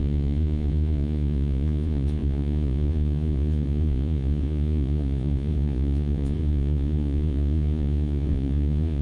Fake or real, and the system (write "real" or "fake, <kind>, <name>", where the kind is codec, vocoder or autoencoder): fake, vocoder, Vocos